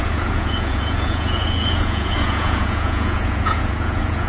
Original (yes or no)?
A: no